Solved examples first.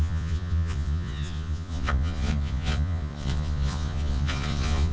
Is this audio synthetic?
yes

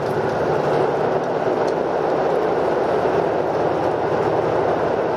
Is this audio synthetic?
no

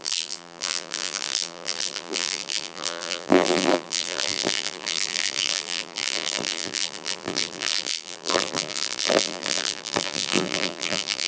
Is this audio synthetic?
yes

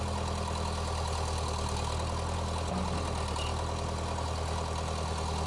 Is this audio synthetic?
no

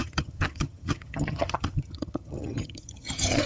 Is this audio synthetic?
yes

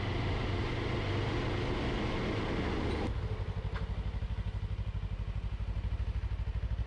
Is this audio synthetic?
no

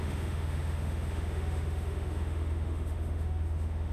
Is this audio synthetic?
yes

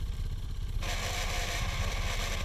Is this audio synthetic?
yes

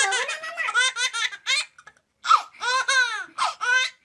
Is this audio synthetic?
no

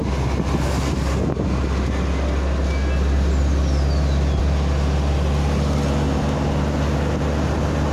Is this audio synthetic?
no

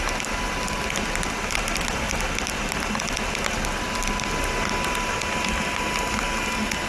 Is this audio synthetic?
no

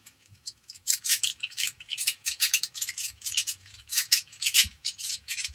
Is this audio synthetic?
yes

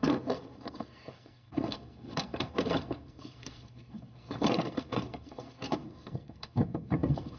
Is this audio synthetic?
yes